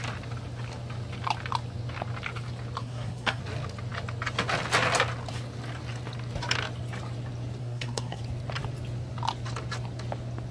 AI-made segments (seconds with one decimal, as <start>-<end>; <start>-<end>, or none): 2.8-3.4; 7.6-8.2